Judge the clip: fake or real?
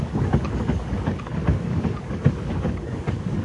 fake